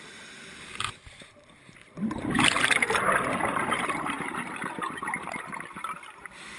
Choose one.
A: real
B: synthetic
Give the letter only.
A